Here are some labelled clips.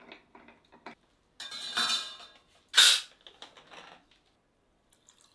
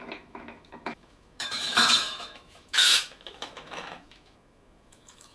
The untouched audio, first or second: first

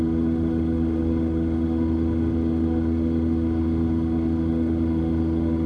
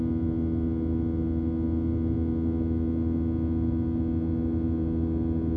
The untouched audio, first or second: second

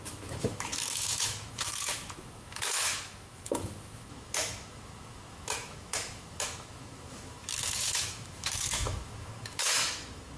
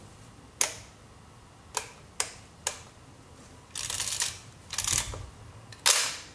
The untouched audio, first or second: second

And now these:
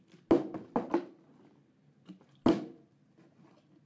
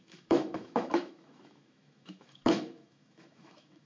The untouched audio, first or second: first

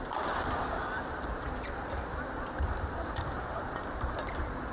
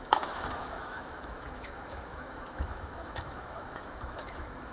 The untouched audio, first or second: first